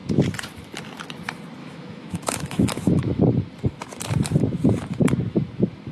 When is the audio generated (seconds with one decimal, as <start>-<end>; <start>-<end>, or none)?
1.6-3.2